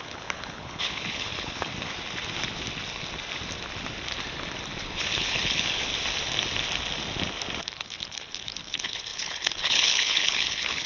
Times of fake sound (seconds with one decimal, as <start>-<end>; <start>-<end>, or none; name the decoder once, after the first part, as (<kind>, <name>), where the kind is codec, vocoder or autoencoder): 0.0-1.7 (codec, HILCodec); 4.8-5.9; 7.6-10.9